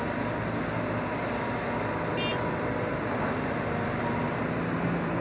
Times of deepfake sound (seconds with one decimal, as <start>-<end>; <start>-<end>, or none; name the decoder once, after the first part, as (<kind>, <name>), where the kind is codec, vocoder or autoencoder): none